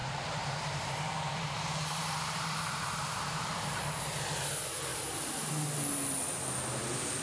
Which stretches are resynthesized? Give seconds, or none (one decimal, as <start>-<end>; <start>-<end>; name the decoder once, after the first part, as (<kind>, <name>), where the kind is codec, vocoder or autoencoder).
0.0-4.0 (vocoder, BigVGAN v2); 4.9-5.5